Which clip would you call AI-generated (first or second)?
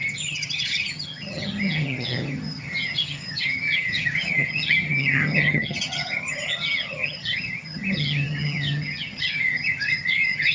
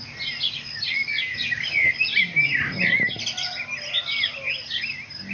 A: first